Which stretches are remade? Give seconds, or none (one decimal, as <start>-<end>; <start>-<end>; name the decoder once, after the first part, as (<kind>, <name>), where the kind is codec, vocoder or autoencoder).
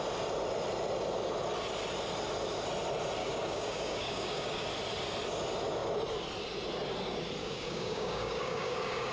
3.2-4.7 (codec, DAC); 7.4-9.1